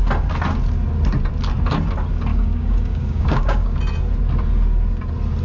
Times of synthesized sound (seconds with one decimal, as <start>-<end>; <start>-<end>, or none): 2.3-3.8